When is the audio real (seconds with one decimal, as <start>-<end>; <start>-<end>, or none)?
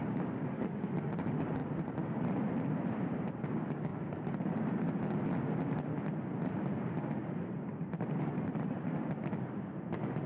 0.5-1.6; 3.4-7.2; 8.8-10.3